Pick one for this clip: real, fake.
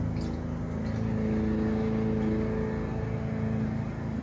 real